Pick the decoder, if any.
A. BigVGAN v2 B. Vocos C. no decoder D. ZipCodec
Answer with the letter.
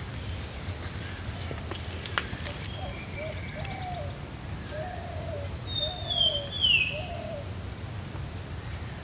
C